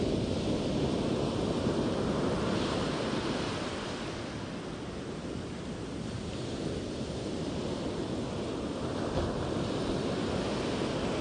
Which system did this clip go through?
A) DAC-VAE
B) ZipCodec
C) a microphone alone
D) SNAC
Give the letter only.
C